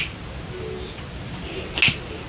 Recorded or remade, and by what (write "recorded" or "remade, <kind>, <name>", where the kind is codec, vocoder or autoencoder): recorded